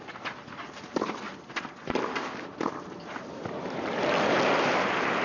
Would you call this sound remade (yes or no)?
no